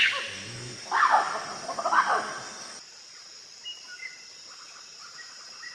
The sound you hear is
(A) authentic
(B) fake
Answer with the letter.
A